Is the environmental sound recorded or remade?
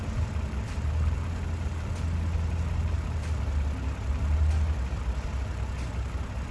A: recorded